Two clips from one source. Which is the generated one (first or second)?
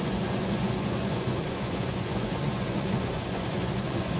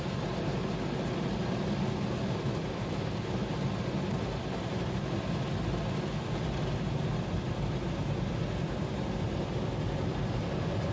first